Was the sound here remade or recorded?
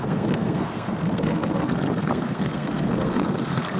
remade